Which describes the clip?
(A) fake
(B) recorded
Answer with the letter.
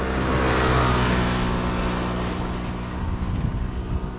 B